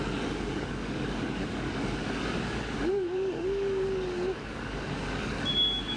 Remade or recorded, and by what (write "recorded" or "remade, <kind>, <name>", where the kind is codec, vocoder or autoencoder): remade, codec, DAC